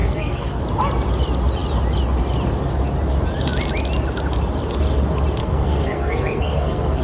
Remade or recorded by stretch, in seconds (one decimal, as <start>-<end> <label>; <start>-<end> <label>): 0.0-0.6 remade; 0.6-5.4 recorded; 5.4-7.0 remade